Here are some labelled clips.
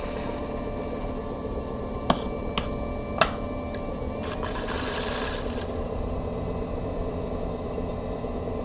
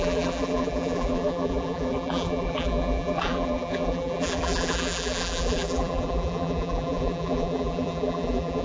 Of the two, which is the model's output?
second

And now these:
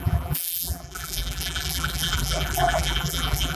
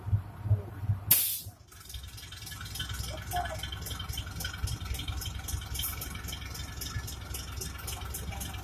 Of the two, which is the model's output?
first